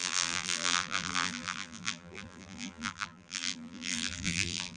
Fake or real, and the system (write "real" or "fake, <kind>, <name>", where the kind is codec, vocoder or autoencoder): fake, vocoder, BigVGAN v2